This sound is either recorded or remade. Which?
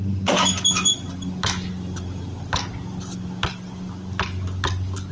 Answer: recorded